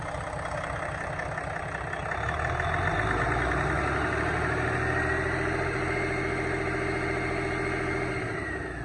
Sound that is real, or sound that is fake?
real